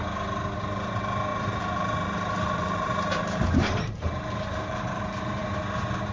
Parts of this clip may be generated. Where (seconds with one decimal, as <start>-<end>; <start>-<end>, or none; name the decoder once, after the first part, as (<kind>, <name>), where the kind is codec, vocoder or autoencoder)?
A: 0.6-6.1 (vocoder, BigVGAN v2)